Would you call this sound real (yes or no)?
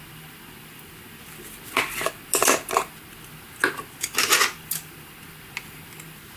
yes